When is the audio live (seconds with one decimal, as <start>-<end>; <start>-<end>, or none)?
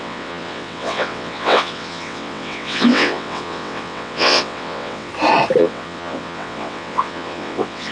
5.1-5.6